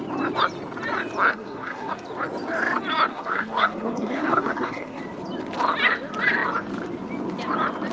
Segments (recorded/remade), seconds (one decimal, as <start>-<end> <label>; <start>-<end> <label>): 0.0-1.3 recorded; 1.3-1.9 remade; 1.9-3.1 recorded; 3.1-5.0 remade; 5.0-7.9 recorded